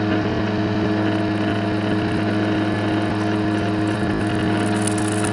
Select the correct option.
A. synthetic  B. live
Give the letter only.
B